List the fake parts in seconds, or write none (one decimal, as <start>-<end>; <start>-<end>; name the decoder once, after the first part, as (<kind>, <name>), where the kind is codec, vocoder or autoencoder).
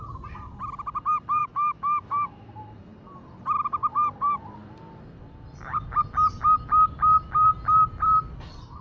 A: 1.4-2.5 (autoencoder, DAC-VAE)